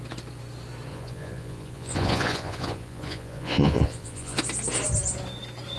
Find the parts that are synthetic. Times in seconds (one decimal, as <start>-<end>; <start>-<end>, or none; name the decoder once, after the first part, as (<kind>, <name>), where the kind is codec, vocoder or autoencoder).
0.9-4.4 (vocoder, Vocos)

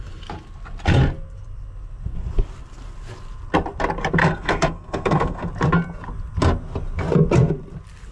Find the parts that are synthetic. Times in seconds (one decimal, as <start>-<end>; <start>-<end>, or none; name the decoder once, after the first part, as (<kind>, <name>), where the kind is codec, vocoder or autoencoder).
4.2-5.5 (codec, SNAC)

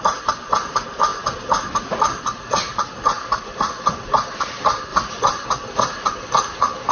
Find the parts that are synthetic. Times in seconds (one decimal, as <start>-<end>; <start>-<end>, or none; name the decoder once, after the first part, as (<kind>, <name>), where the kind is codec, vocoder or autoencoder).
none